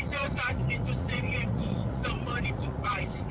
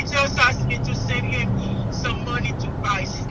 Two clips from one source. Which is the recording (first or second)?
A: second